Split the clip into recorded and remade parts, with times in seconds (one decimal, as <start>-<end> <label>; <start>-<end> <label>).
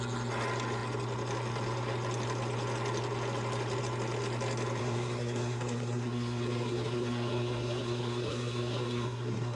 0.0-4.8 recorded; 4.8-9.6 remade